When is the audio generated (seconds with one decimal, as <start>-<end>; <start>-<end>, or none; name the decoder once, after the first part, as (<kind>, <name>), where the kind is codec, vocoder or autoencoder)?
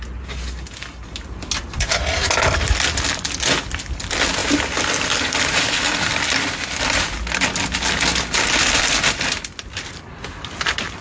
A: none